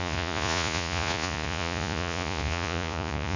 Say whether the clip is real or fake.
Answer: fake